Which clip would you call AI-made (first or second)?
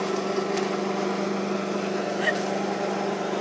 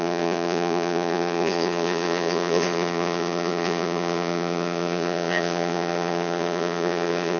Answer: second